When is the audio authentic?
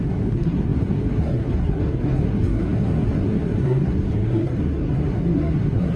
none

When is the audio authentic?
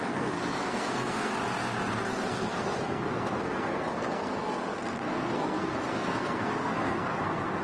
1.3-1.9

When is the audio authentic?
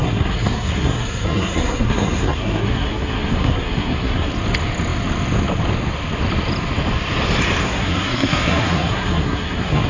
4.3-7.6